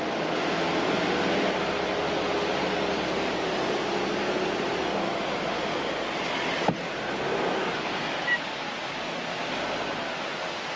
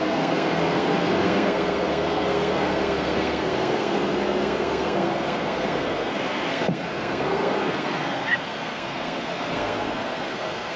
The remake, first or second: second